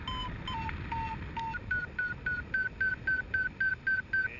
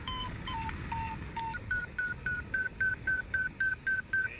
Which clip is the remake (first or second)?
second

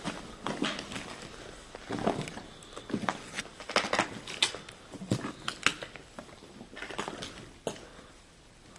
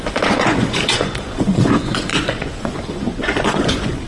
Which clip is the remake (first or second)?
second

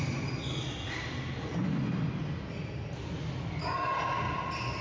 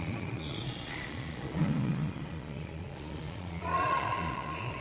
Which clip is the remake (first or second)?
second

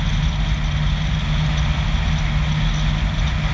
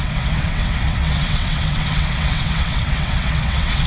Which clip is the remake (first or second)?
second